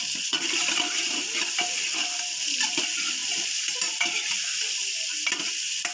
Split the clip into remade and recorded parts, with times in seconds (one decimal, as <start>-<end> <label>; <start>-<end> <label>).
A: 0.0-5.9 recorded